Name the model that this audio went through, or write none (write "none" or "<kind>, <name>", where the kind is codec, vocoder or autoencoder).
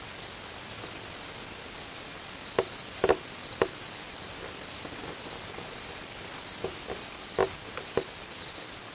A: none